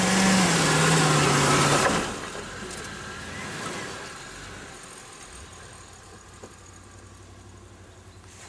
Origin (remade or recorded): recorded